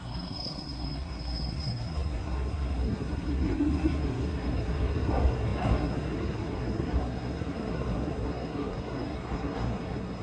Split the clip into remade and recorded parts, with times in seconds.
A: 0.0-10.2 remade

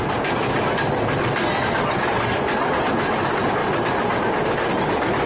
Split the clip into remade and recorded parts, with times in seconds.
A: 0.0-5.3 recorded

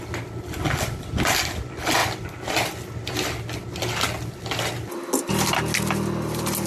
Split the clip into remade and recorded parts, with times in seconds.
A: 0.0-6.7 recorded

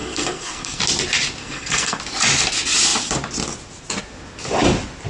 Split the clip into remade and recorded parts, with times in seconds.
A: 0.0-0.8 remade; 0.8-1.4 recorded; 1.4-2.0 remade; 2.0-5.1 recorded

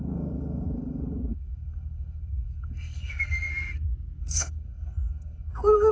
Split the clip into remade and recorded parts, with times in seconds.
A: 0.0-3.5 remade; 3.5-4.2 recorded; 4.2-5.9 remade